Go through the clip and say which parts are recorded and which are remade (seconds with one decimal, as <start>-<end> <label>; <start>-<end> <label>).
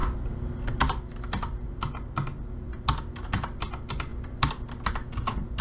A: 0.0-5.6 recorded